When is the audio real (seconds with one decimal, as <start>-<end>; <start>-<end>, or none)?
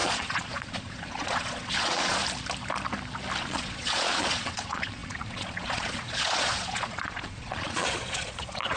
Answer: 2.2-3.4